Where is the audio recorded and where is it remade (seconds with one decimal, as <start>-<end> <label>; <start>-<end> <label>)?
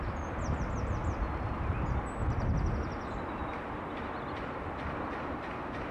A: 0.0-5.9 recorded